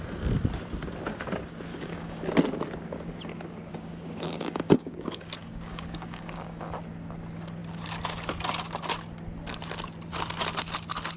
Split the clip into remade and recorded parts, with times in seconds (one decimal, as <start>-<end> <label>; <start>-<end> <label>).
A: 0.0-1.7 recorded; 1.7-2.2 remade; 2.2-3.7 recorded; 3.7-6.6 remade; 6.6-11.2 recorded